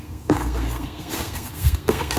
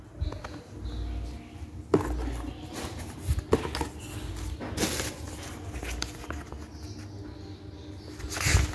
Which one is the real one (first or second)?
second